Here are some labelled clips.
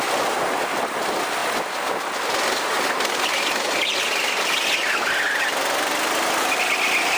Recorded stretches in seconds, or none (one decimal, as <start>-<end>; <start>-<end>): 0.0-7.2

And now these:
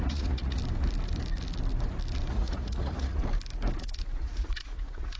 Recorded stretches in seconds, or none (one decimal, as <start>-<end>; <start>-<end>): 0.6-2.3; 3.2-3.8

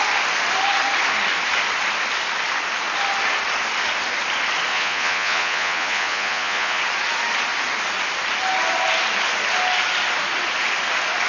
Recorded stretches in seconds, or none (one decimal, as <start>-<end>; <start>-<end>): 0.0-4.7; 6.8-11.3

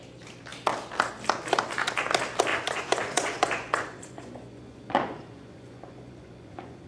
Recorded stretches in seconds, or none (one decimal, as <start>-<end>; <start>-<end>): 0.0-2.5

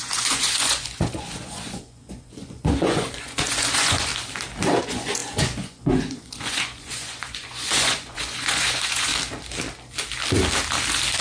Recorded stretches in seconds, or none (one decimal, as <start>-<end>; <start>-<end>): 4.1-4.8; 9.1-11.2

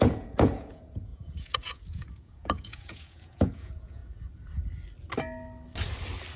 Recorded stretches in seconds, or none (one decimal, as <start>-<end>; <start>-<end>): 4.0-6.4